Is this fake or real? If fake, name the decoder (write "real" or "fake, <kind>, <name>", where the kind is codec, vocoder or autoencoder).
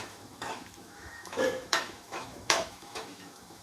fake, autoencoder, DAC-VAE